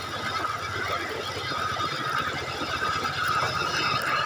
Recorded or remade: recorded